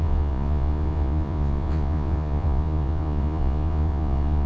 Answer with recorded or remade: remade